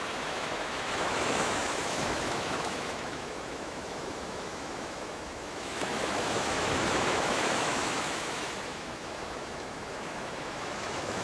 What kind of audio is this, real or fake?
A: fake